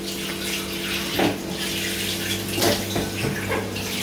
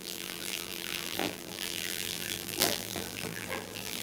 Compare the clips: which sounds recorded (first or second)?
first